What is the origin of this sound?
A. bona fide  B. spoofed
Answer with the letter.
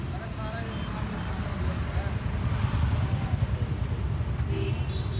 A